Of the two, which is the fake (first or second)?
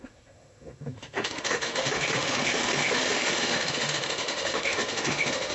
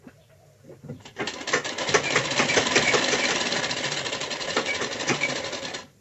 first